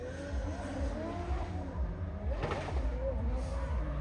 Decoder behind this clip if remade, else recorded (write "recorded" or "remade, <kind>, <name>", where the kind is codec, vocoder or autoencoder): recorded